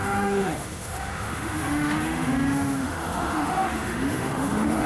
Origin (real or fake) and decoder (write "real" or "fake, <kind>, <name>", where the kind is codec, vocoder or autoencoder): fake, autoencoder, DAC-VAE